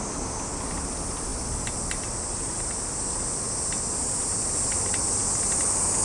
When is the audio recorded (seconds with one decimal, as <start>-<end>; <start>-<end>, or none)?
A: 0.0-6.0